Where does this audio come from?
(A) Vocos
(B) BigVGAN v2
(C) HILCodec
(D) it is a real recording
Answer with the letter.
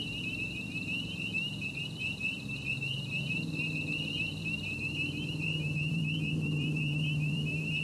B